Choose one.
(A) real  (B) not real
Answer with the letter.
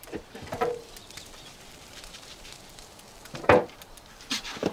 B